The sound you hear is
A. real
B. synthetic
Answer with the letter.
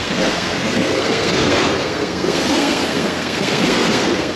B